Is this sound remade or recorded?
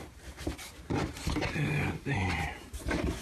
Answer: remade